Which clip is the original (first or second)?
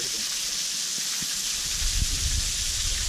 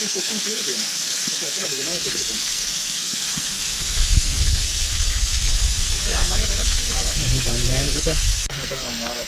first